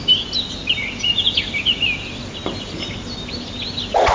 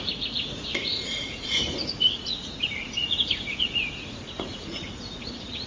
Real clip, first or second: first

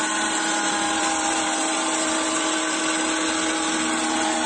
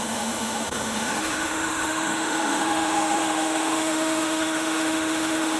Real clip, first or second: first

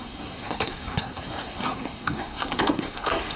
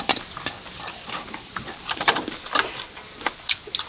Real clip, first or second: second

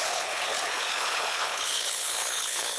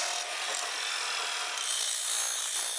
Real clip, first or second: second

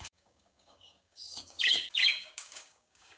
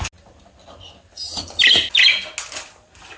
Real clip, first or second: second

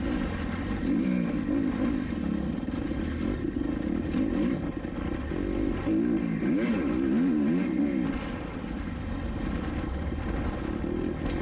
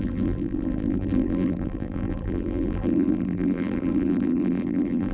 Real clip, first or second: first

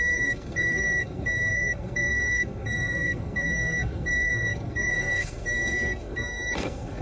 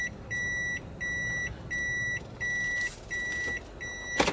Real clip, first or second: second